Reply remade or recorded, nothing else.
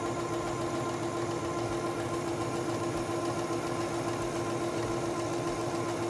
recorded